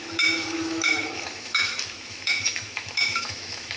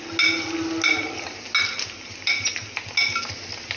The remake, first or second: first